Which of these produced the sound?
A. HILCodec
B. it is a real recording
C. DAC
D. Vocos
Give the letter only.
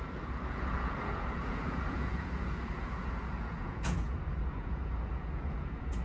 D